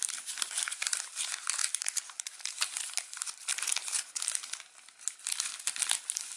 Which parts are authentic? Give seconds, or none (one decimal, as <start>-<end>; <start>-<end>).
0.0-1.6; 2.9-3.5; 4.2-6.4